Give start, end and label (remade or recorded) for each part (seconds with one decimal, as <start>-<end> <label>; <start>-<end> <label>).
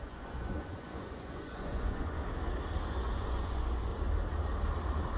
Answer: 0.0-2.2 remade; 2.2-2.9 recorded; 2.9-3.9 remade; 3.9-5.2 recorded